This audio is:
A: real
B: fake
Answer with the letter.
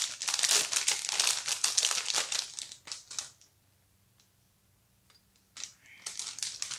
A